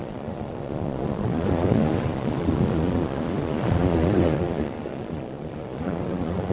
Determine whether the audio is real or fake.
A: fake